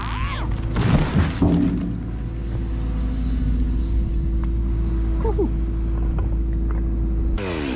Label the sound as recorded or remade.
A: recorded